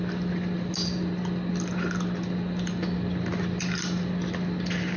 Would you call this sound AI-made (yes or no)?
no